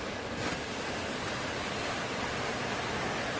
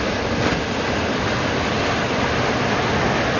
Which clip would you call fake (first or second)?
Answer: first